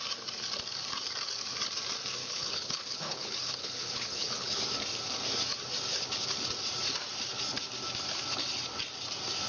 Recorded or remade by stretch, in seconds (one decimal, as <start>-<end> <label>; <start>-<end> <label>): 0.0-2.2 recorded; 2.2-4.6 remade; 4.6-9.5 recorded